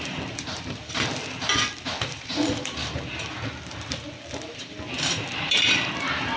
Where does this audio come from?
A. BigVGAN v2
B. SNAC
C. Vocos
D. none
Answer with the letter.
A